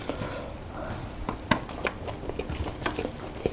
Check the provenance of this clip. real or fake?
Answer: real